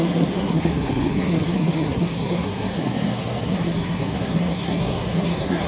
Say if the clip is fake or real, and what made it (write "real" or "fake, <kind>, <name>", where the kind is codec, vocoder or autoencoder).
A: fake, codec, SNAC